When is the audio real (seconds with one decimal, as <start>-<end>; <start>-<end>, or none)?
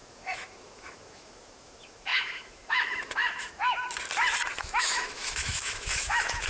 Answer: 3.6-4.6